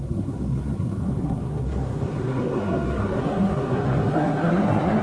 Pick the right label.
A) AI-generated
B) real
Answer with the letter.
A